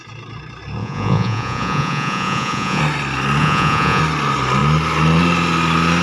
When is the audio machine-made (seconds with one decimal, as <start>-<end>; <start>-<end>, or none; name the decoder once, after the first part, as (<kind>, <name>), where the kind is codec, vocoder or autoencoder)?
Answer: 0.8-2.8 (vocoder, Vocos); 3.4-4.0